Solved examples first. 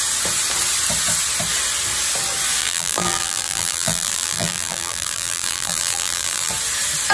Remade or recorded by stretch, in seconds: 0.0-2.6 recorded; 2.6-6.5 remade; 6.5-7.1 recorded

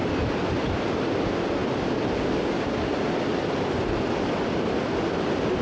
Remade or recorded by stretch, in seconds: 0.0-5.6 recorded

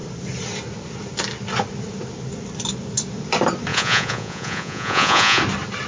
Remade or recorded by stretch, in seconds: 0.0-3.7 recorded; 3.7-5.4 remade; 5.4-5.9 recorded

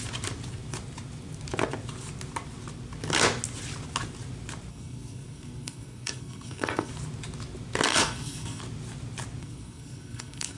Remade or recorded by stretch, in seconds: 0.0-4.7 recorded; 4.7-6.9 remade; 6.9-7.9 recorded; 7.9-8.6 remade; 8.6-9.4 recorded; 9.4-10.6 remade

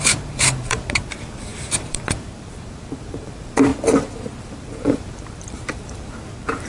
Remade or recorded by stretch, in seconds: 0.0-3.7 remade; 3.7-4.4 recorded; 4.4-6.7 remade

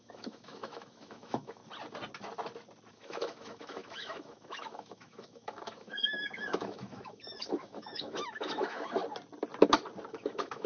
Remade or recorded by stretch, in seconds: 0.0-1.6 remade; 1.6-2.9 recorded; 2.9-9.0 remade; 9.0-10.1 recorded; 10.1-10.7 remade

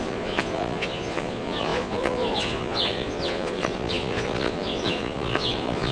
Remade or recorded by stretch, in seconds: 0.0-5.9 remade